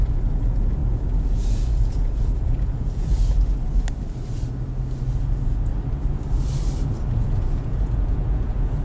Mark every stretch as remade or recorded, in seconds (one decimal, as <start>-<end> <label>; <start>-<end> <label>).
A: 0.0-3.1 remade; 3.1-5.2 recorded; 5.2-5.7 remade; 5.7-7.1 recorded; 7.1-8.8 remade